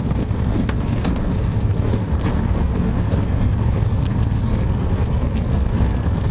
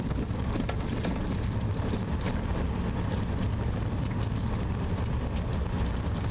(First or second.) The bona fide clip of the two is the second